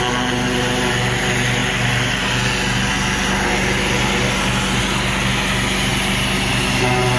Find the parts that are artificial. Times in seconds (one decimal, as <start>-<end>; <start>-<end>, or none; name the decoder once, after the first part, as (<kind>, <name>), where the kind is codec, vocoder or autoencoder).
none